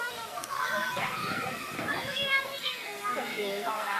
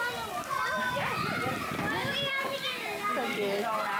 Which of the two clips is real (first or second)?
second